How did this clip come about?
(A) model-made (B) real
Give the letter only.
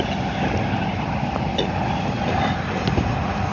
B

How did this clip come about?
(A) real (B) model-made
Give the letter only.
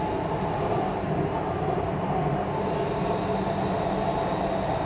A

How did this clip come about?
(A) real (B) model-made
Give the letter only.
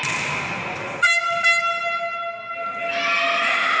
A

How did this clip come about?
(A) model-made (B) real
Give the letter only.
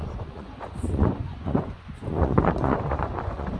A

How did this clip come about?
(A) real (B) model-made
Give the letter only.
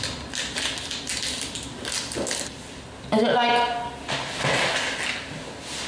A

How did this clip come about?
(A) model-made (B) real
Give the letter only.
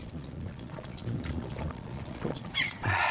A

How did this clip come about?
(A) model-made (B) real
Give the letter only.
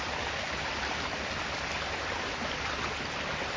B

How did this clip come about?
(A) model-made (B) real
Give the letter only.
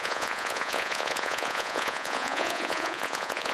A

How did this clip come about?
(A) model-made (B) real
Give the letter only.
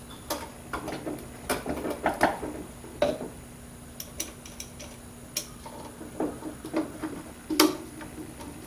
B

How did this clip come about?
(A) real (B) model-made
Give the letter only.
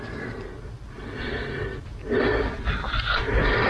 A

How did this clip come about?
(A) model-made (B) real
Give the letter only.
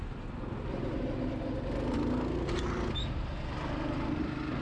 B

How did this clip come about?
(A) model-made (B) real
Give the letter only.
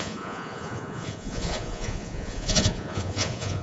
A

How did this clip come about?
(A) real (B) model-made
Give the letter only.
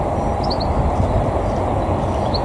A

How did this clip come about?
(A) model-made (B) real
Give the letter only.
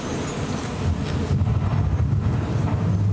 B